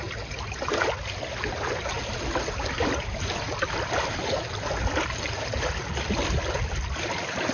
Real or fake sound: real